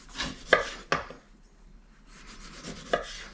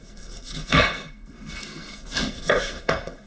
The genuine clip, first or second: first